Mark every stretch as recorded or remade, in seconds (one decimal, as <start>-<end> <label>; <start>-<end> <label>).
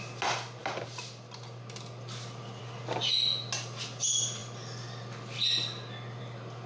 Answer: 0.0-6.7 recorded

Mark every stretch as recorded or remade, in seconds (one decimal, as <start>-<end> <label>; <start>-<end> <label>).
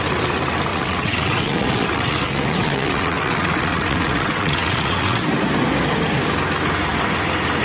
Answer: 0.0-0.7 recorded; 0.7-5.3 remade; 5.3-7.6 recorded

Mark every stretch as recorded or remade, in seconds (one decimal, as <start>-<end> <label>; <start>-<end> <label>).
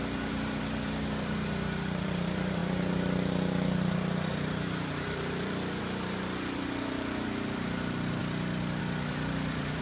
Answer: 0.0-8.2 remade; 8.2-8.8 recorded; 8.8-9.8 remade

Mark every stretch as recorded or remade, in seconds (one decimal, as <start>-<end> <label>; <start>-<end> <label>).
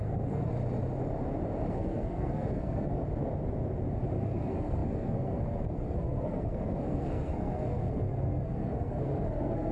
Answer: 0.0-0.5 remade; 0.5-1.7 recorded; 1.7-3.0 remade; 3.0-4.2 recorded; 4.2-9.7 remade